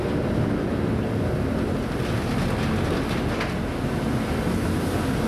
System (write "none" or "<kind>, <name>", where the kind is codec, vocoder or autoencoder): none